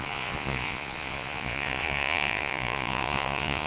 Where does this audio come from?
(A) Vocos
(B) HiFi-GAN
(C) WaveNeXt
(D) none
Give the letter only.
A